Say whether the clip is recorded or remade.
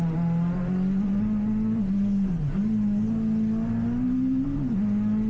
recorded